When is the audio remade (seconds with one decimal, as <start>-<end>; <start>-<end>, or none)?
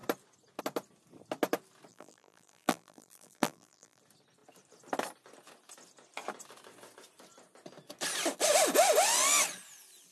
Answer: 1.9-4.0